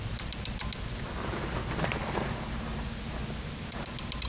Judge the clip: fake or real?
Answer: real